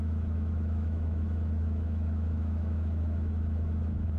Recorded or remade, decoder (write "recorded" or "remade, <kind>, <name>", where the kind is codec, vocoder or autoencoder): remade, autoencoder, DAC-VAE